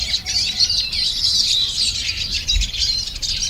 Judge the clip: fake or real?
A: fake